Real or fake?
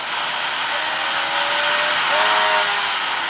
real